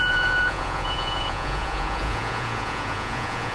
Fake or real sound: fake